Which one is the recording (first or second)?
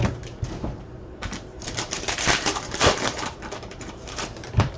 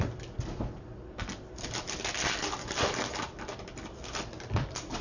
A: second